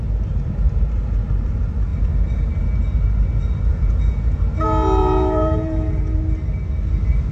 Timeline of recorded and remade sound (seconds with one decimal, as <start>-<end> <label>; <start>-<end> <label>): 0.0-3.7 recorded; 3.7-4.4 remade; 4.4-5.0 recorded; 5.0-6.2 remade; 6.2-7.3 recorded

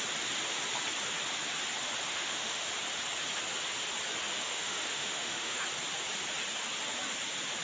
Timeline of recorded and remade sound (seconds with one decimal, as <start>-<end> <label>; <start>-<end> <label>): 0.0-2.1 recorded; 2.1-2.7 remade; 2.7-4.4 recorded; 4.4-5.6 remade; 5.6-7.6 recorded

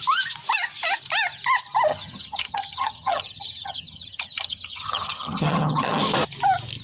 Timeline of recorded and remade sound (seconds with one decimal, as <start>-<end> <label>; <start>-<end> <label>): 0.0-1.9 recorded; 1.9-6.0 remade; 6.0-6.8 recorded

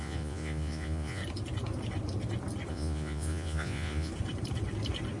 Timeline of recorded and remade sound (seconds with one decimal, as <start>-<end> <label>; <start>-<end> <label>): 0.0-1.2 remade; 1.2-2.7 recorded; 2.7-4.1 remade; 4.1-5.2 recorded

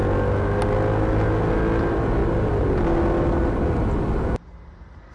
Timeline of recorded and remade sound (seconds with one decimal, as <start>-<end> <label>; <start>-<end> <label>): 0.0-5.1 recorded

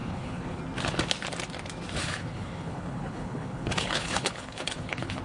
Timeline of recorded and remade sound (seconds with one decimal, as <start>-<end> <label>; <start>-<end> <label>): 0.0-0.6 remade; 0.6-2.0 recorded; 2.0-5.2 remade

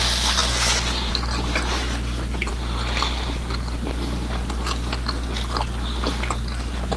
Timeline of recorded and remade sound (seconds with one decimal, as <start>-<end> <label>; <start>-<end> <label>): 0.0-7.0 recorded

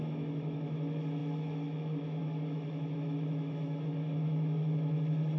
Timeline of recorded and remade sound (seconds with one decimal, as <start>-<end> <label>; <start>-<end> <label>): 0.0-5.4 remade